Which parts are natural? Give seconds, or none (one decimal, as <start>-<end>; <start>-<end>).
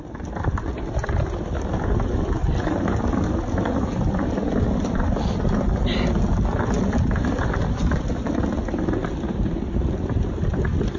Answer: 0.0-11.0